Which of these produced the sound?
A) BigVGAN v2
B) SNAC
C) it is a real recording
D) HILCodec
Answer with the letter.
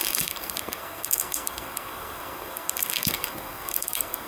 B